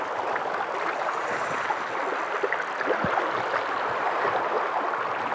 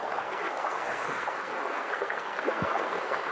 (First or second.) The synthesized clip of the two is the second